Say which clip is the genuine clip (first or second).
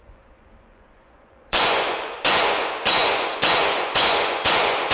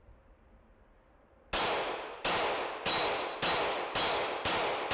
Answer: second